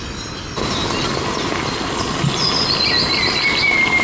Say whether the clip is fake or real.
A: real